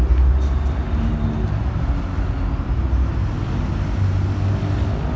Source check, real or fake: real